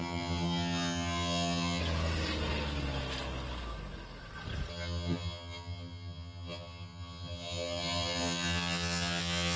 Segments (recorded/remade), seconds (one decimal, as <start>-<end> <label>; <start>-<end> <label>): 0.0-1.8 remade; 1.8-4.7 recorded; 4.7-9.6 remade